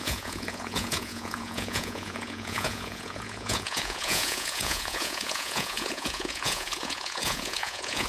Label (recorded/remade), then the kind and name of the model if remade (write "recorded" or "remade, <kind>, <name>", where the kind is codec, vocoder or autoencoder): remade, vocoder, Vocos